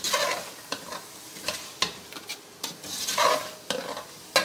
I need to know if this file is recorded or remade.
recorded